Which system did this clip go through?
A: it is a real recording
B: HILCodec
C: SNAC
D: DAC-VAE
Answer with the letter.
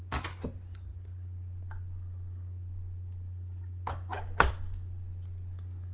A